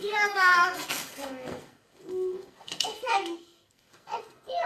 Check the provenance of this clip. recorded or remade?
remade